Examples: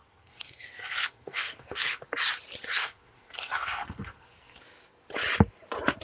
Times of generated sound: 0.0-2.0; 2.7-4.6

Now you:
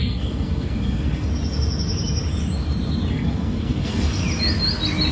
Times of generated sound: 0.0-1.3; 3.1-4.2

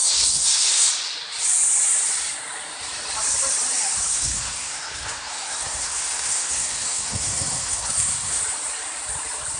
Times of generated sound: 0.0-0.9; 4.1-8.4

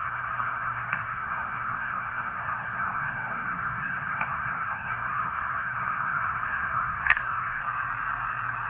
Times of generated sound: 0.0-7.6